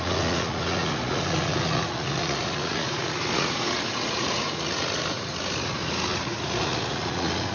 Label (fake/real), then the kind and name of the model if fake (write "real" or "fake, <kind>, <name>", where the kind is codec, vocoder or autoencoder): fake, vocoder, Vocos